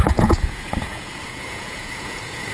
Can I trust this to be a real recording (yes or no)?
no